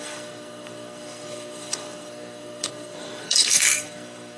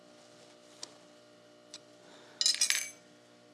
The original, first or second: second